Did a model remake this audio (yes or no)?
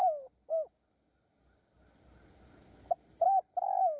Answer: no